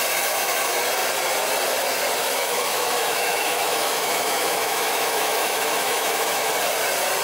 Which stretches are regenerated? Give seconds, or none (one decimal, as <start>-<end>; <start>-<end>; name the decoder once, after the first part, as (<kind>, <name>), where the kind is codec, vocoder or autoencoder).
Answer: 2.2-6.5 (autoencoder, DAC-VAE)

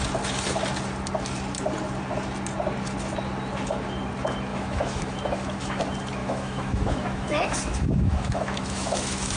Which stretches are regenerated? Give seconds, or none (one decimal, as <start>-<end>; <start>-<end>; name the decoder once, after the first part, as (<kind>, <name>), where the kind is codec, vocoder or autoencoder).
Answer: 4.5-5.8 (autoencoder, DAC-VAE); 6.2-9.4

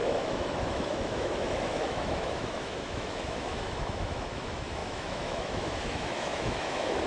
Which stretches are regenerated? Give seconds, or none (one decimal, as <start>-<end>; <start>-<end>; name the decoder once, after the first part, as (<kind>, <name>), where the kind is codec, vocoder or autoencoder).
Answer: 0.0-7.1 (autoencoder, DAC-VAE)

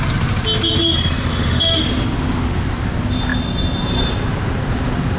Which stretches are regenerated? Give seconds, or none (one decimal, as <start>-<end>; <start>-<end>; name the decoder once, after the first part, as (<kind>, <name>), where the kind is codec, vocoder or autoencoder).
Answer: 1.3-1.8 (autoencoder, DAC-VAE)

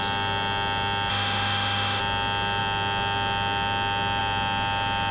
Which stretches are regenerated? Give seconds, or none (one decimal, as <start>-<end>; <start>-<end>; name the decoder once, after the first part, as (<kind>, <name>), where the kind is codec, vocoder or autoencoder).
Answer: 1.1-2.0 (autoencoder, DAC-VAE)

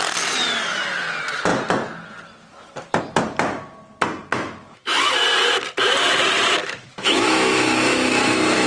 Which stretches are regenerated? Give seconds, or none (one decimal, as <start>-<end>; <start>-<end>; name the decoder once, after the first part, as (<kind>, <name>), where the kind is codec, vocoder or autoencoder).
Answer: 4.3-5.0 (autoencoder, DAC-VAE); 6.6-8.7

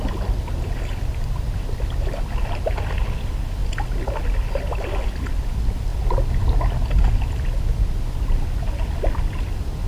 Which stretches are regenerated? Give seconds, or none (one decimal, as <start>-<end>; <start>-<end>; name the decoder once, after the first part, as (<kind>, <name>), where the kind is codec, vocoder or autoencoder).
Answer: none